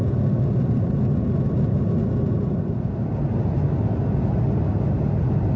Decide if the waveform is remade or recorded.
recorded